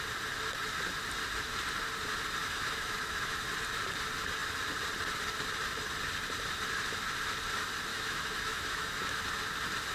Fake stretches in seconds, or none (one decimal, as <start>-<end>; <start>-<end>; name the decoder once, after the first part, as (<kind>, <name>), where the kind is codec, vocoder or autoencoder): 2.4-3.5 (autoencoder, DAC-VAE); 7.9-9.2